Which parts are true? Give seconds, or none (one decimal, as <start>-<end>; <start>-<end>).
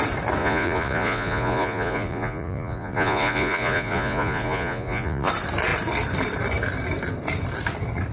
0.0-0.4; 5.3-8.1